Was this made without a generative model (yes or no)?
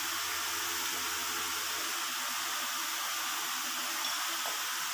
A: yes